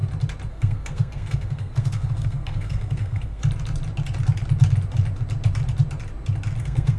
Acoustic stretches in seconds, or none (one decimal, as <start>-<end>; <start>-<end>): 0.0-0.5; 3.4-6.6